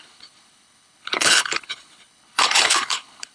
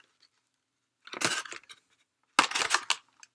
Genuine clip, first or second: second